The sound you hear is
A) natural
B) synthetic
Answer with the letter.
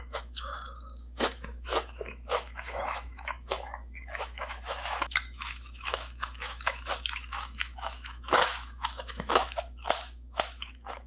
B